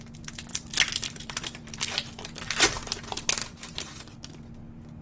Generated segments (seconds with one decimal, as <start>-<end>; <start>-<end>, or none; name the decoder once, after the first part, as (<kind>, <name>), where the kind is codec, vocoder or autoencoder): 0.5-1.8 (vocoder, BigVGAN v2); 3.4-4.4